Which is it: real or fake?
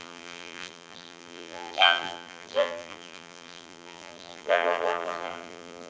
fake